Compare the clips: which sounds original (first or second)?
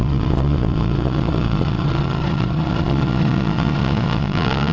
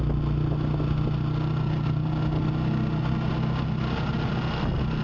second